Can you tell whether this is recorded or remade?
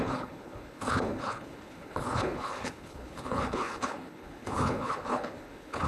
remade